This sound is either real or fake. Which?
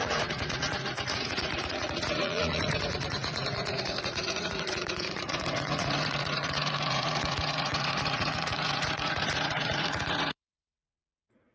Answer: fake